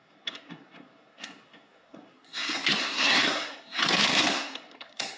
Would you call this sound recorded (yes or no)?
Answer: no